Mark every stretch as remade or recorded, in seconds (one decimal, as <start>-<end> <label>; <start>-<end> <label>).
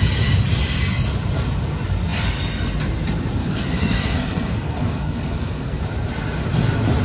0.0-3.4 recorded; 3.4-5.8 remade; 5.8-7.0 recorded